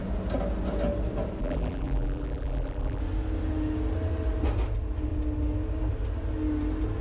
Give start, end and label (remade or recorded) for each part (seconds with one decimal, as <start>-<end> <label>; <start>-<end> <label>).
0.0-1.4 recorded; 1.4-3.0 remade; 3.0-7.0 recorded